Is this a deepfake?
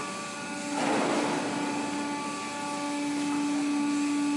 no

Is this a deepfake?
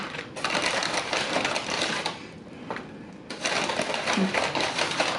no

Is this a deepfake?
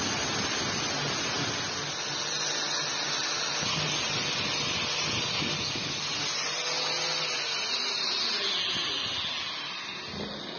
no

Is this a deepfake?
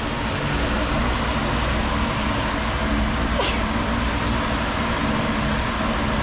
no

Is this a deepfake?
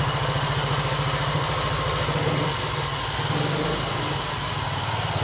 no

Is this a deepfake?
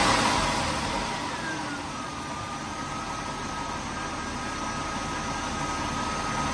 no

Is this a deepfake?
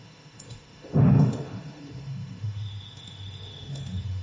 yes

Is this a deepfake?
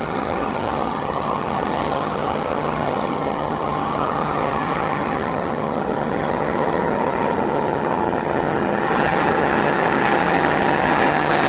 yes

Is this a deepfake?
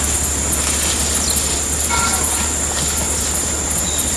no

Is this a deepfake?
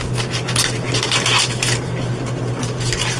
no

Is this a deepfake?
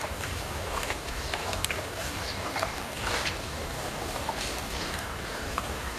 yes